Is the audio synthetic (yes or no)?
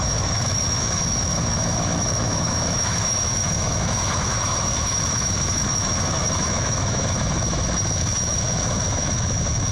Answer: yes